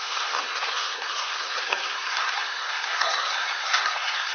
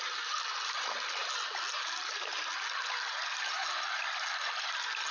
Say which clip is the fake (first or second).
first